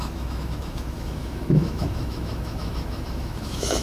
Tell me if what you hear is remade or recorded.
remade